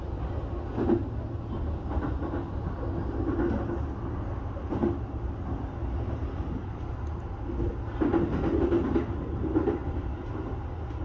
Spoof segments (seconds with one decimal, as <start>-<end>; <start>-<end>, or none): none